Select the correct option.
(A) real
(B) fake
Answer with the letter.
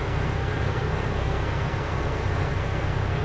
B